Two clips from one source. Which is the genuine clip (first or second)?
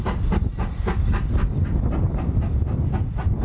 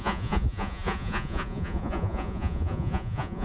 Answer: first